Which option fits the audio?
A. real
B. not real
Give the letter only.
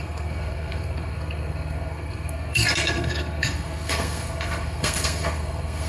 B